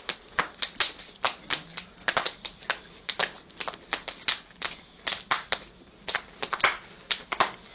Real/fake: real